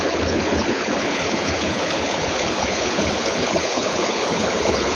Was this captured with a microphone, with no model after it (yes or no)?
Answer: no